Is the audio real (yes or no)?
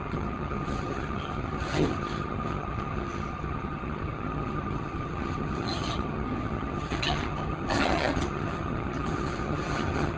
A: no